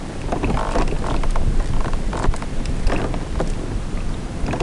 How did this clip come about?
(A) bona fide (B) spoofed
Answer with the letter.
B